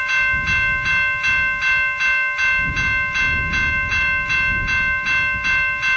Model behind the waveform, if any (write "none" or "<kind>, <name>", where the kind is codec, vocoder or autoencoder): none